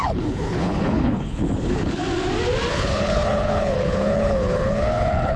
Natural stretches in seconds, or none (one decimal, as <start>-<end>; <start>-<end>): 2.0-2.7